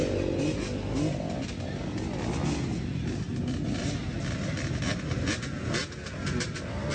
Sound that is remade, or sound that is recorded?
recorded